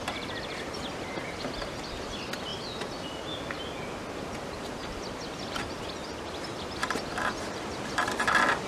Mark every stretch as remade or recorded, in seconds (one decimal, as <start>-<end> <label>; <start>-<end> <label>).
0.0-8.7 recorded